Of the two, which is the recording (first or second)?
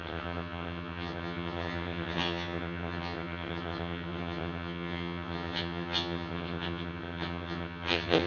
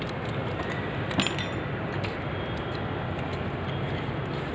second